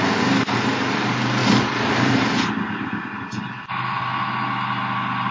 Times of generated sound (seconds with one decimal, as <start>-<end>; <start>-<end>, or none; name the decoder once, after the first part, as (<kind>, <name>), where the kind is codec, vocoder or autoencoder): 1.4-4.0 (vocoder, BigVGAN v2)